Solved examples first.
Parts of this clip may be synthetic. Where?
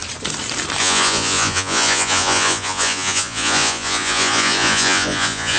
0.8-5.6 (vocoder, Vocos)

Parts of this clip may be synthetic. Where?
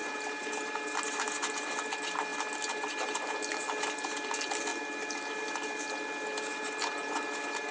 none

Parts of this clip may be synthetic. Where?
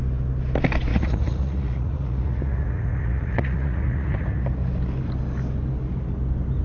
0.9-4.4 (vocoder, Vocos)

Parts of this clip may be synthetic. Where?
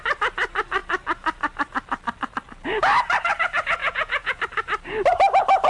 3.8-4.4 (vocoder, Vocos)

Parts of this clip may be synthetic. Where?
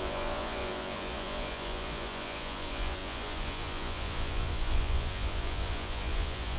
0.0-6.6 (vocoder, Vocos)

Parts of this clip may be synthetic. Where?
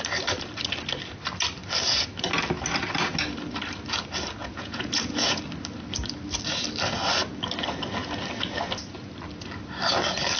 4.4-5.4 (vocoder, Vocos)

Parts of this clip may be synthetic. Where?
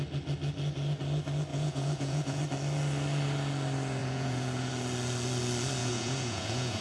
1.5-2.4 (vocoder, Vocos); 4.0-4.7; 5.8-6.8